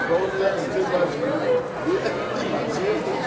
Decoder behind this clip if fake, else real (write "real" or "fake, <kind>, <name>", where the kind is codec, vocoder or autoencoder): real